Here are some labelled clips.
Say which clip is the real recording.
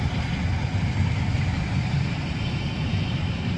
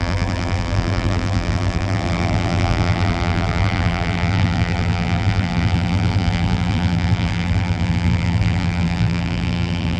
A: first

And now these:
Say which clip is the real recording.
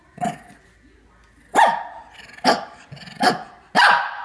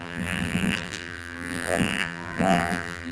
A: first